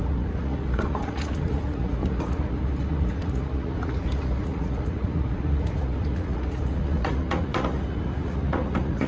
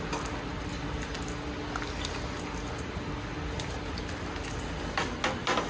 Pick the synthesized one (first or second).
first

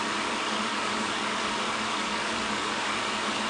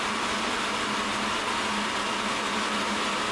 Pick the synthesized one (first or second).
first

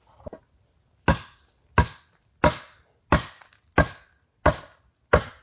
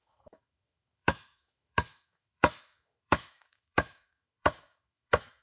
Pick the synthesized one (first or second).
second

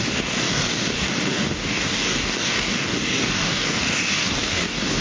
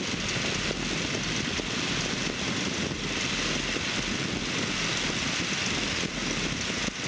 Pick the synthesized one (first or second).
first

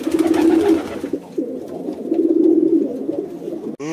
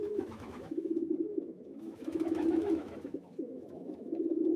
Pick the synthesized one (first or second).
second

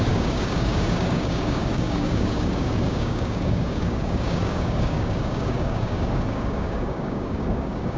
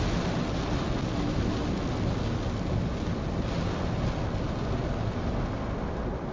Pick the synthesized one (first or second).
first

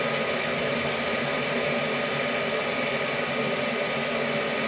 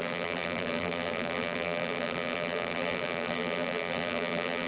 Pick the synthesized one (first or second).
second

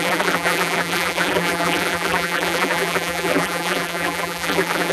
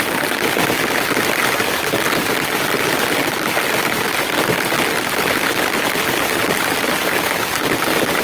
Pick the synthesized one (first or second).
first